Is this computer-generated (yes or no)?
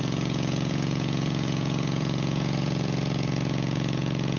yes